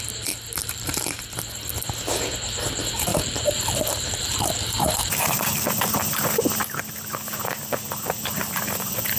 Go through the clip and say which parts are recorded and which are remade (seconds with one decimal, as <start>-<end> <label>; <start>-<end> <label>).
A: 0.0-0.6 recorded; 0.6-1.2 remade; 1.2-3.1 recorded; 3.1-5.9 remade; 5.9-9.2 recorded